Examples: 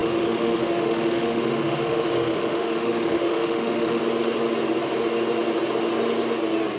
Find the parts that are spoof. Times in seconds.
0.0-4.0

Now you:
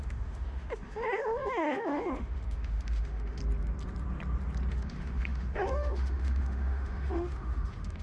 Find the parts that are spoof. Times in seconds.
0.0-3.4; 4.7-8.0